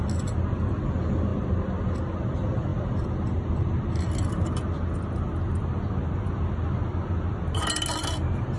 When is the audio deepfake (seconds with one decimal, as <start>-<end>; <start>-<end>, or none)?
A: none